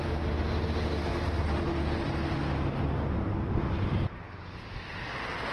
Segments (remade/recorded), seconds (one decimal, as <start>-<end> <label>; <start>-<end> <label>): 0.0-5.5 recorded